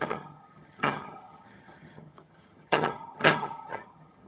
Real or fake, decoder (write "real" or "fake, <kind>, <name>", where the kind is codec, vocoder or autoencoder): fake, vocoder, HiFi-GAN